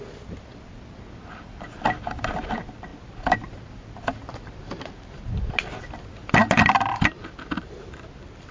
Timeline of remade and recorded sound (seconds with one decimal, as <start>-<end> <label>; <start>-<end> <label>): 0.0-8.5 recorded